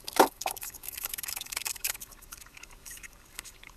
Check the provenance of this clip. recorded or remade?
remade